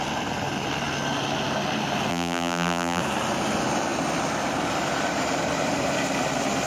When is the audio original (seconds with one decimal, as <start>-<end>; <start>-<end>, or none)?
0.0-2.1; 3.0-6.7

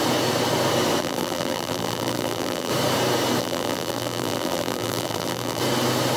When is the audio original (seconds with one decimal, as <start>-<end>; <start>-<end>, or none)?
0.0-1.0; 2.7-3.4; 5.6-6.2

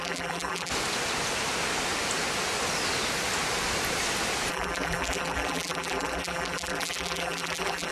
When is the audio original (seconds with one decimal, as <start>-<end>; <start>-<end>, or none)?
0.7-4.5

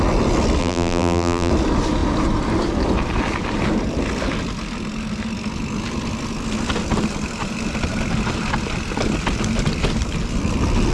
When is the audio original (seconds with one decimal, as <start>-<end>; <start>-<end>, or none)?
0.0-0.6; 1.5-10.9